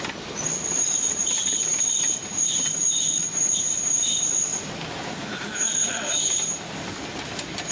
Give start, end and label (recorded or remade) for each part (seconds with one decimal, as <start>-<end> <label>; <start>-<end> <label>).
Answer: 0.0-4.5 recorded; 4.5-7.7 remade